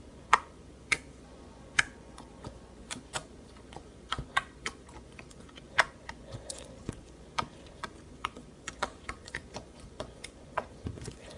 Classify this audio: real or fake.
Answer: fake